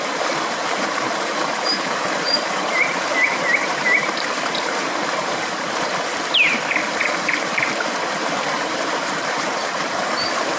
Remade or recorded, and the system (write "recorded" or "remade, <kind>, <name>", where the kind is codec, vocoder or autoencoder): remade, vocoder, BigVGAN v2